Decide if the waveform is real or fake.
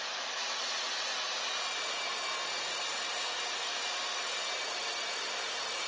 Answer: real